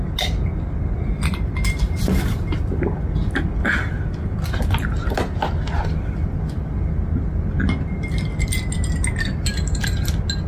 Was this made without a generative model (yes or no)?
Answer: yes